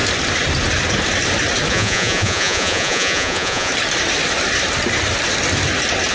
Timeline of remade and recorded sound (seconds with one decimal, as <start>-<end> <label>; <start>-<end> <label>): 0.0-1.7 recorded; 1.7-3.7 remade; 3.7-6.1 recorded